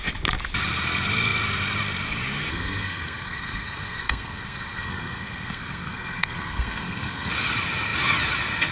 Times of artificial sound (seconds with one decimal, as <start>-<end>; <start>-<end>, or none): 2.5-7.3